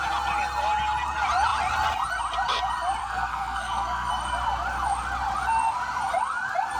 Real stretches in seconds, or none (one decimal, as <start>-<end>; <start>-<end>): 0.0-3.0; 4.1-6.8